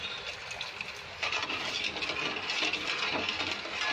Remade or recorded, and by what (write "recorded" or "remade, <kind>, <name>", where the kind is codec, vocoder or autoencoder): recorded